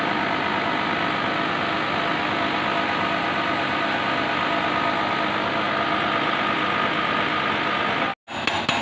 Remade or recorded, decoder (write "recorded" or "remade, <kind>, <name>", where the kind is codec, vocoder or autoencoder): recorded